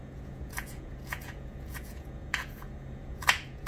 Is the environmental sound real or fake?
fake